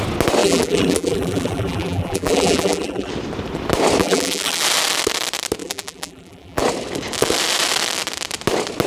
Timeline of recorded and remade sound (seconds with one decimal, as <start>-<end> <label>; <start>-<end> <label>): 0.0-0.4 recorded; 0.4-3.1 remade; 3.1-4.0 recorded; 4.0-4.6 remade; 4.6-5.6 recorded; 5.6-6.6 remade; 6.6-8.9 recorded